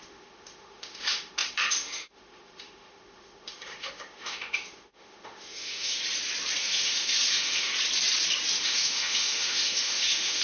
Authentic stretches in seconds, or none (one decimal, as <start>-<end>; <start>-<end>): 6.0-6.6; 7.7-8.6